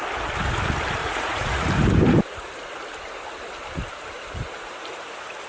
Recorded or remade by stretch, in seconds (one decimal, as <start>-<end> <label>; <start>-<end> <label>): 0.0-1.0 recorded; 1.0-1.7 remade; 1.7-5.5 recorded